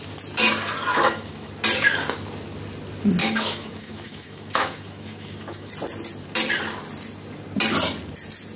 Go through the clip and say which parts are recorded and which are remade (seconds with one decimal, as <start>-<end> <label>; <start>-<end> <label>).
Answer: 0.0-0.9 recorded; 0.9-1.5 remade; 1.5-3.2 recorded; 3.2-5.7 remade; 5.7-8.6 recorded